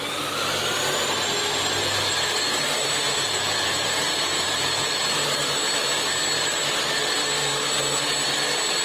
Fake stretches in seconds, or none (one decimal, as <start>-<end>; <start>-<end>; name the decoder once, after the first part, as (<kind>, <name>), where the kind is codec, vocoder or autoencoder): 3.0-5.0 (vocoder, Vocos)